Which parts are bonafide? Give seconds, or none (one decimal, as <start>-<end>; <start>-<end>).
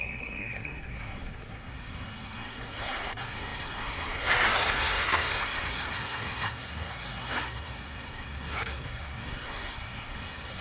none